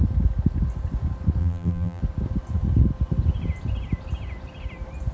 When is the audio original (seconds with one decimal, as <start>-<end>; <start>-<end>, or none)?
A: 0.0-1.4; 2.0-5.1